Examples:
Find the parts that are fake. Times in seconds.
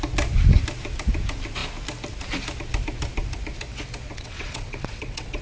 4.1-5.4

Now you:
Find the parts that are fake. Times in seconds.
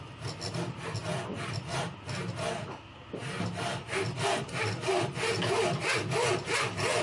none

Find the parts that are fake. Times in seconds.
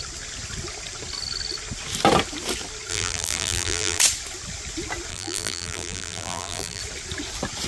2.9-4.0; 5.1-6.8